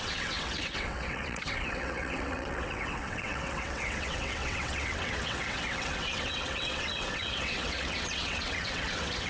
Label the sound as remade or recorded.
remade